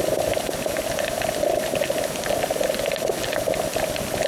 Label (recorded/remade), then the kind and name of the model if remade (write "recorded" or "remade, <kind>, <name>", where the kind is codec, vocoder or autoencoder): recorded